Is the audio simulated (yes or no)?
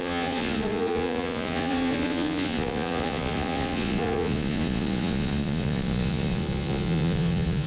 yes